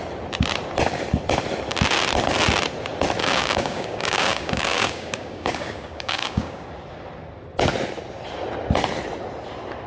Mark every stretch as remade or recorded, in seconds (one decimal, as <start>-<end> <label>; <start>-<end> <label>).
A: 0.0-3.2 recorded; 3.2-6.7 remade; 6.7-9.9 recorded